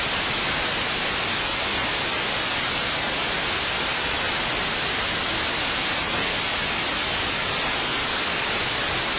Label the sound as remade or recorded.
recorded